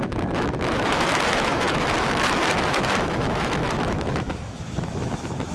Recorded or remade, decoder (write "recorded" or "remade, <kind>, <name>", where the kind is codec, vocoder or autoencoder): remade, autoencoder, DAC-VAE